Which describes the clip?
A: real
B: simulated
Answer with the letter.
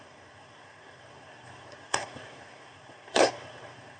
B